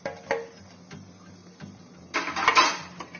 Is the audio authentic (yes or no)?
yes